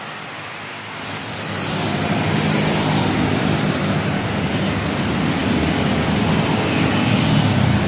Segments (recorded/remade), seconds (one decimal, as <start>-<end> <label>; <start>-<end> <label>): 0.0-7.9 recorded